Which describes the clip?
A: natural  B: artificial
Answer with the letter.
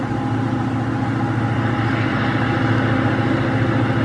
A